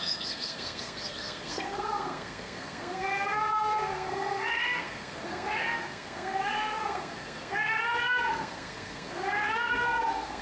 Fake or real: fake